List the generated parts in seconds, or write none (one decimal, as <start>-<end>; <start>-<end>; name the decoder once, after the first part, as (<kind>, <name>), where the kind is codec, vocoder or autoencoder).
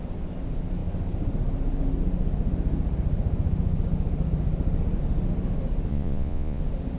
5.9-6.6 (vocoder, Vocos)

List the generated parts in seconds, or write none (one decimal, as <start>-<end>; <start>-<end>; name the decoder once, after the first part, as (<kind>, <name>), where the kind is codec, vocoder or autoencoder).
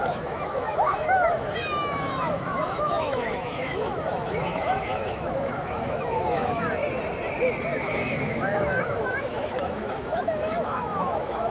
0.0-6.8 (autoencoder, DAC-VAE); 7.8-11.5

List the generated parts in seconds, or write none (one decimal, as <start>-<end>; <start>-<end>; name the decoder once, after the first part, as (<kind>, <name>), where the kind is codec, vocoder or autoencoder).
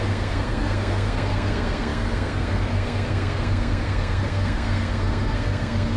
0.0-6.0 (codec, SNAC)